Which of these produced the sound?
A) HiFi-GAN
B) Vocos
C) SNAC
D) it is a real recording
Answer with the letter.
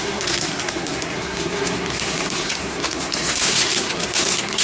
C